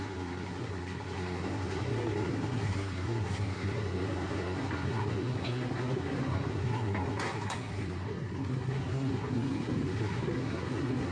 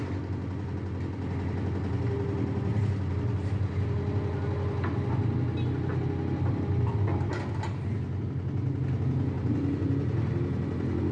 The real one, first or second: second